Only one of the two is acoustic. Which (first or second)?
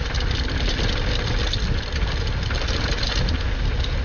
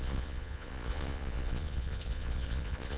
first